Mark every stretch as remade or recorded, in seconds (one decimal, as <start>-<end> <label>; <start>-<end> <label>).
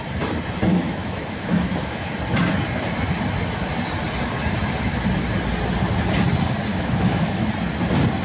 0.0-0.7 recorded; 0.7-2.1 remade; 2.1-6.7 recorded; 6.7-7.5 remade; 7.5-8.2 recorded